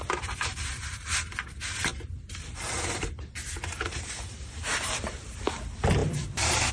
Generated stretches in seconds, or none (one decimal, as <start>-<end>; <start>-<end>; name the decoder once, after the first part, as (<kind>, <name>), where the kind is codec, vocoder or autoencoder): 0.5-1.3 (vocoder, BigVGAN v2); 1.9-5.4; 6.0-6.7